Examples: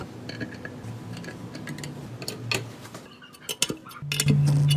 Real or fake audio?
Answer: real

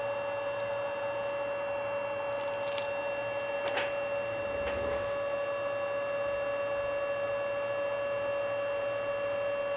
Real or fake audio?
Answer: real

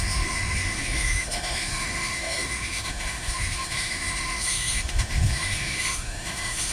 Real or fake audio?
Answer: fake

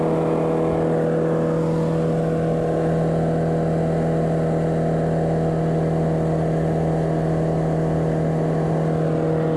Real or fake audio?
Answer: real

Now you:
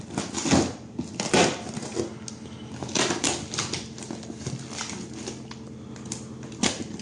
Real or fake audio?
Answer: real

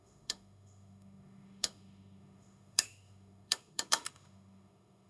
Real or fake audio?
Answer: fake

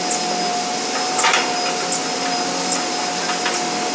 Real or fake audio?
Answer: real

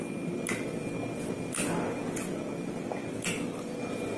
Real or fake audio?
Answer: real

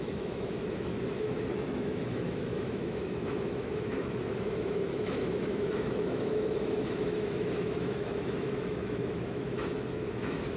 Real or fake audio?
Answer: fake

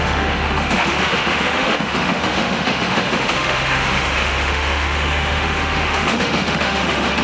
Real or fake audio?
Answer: fake